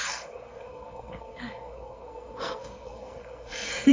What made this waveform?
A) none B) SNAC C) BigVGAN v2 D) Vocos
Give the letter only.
B